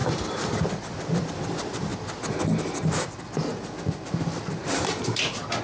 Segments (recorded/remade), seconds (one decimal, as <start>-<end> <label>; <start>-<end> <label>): 0.0-1.2 recorded; 1.2-1.9 remade; 1.9-3.9 recorded; 3.9-5.6 remade